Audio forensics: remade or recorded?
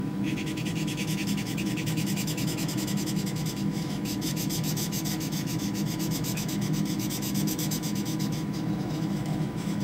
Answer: remade